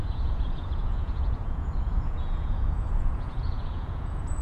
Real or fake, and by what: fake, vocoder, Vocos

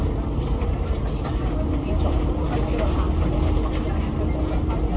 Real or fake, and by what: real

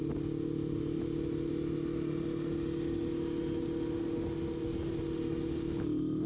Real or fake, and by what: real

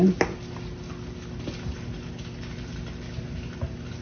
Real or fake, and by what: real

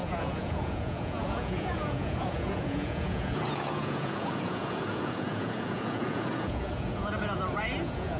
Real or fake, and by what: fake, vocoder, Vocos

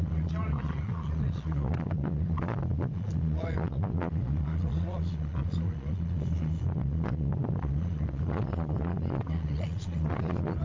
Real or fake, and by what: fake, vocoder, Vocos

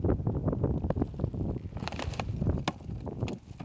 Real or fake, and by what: real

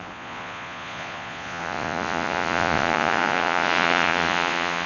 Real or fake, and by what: fake, vocoder, Vocos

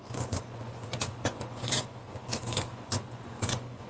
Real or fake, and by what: fake, vocoder, Vocos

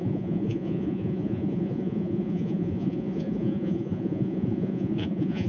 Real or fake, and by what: fake, vocoder, Vocos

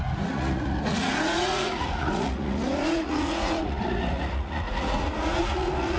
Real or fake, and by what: fake, vocoder, Vocos